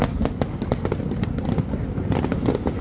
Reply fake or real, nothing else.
real